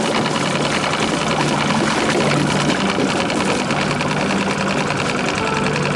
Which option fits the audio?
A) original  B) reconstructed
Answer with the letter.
A